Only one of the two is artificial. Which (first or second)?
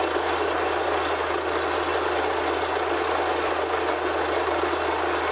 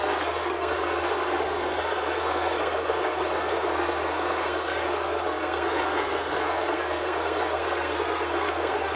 second